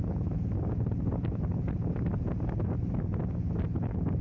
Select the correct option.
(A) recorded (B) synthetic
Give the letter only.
A